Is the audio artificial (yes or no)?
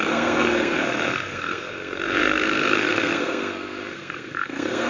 yes